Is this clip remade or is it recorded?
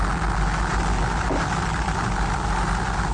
recorded